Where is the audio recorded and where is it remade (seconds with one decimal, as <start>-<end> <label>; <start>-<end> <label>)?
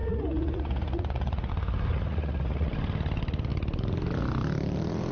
0.0-1.5 remade; 1.5-1.9 recorded; 1.9-2.7 remade; 2.7-5.1 recorded